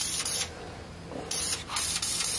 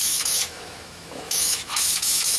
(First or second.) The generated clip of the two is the second